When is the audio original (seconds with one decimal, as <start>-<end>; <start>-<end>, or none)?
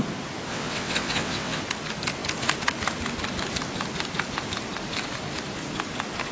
0.0-0.5; 1.6-6.3